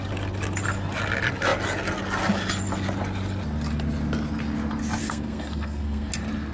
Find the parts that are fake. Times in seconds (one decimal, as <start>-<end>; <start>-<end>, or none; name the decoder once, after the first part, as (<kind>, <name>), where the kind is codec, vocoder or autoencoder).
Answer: 5.0-6.1 (codec, SNAC)